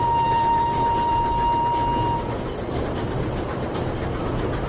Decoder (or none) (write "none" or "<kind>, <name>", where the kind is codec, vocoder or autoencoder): none